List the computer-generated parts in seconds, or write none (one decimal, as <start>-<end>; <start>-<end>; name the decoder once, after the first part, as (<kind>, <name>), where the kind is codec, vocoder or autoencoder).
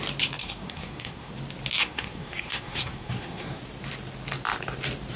0.4-1.3 (codec, SNAC); 1.8-3.6